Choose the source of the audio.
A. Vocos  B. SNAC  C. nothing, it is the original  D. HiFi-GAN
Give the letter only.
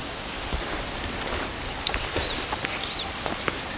C